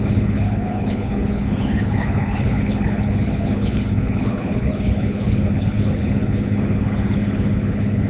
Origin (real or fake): fake